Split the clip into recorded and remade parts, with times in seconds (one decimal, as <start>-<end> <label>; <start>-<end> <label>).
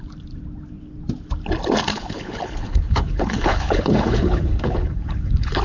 0.0-1.9 recorded; 1.9-5.6 remade